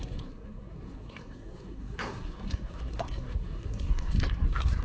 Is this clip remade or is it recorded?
remade